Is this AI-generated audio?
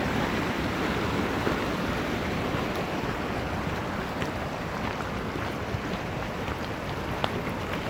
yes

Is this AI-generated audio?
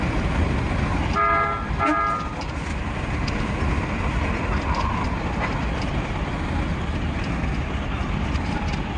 no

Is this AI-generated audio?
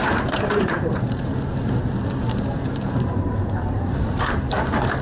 yes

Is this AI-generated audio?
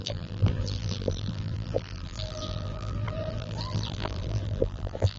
yes